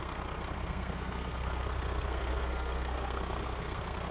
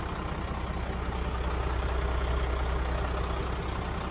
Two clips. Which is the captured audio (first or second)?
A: second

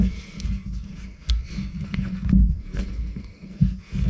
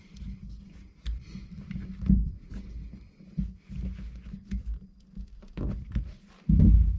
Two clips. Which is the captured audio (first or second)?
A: second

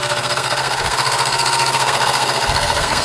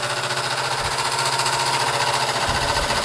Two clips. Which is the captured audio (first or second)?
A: second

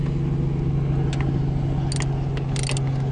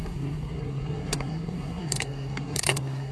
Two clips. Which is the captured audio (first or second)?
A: first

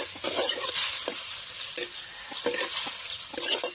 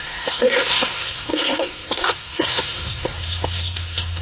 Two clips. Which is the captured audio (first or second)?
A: first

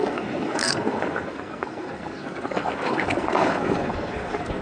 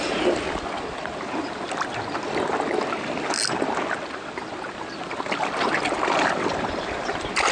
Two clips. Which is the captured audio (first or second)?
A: second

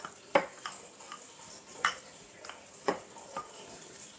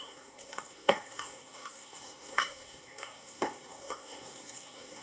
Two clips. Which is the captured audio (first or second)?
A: first